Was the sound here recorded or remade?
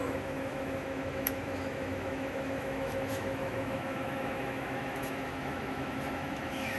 remade